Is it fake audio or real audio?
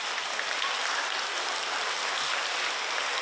real